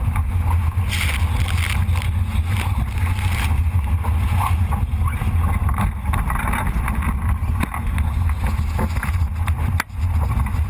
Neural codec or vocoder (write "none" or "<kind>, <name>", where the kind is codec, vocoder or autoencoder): none